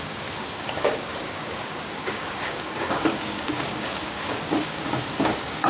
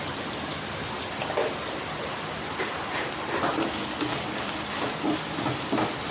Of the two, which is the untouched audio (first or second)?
second